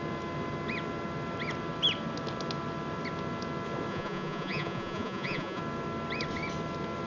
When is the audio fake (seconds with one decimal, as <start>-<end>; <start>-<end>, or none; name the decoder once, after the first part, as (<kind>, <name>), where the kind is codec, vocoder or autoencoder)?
3.9-5.6 (vocoder, Vocos)